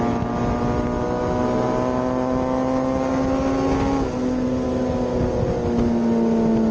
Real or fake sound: real